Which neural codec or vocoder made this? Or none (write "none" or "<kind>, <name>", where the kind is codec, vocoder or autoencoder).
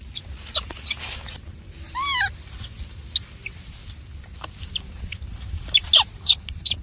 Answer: none